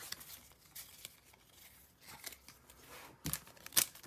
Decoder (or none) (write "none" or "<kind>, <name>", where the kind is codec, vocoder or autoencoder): none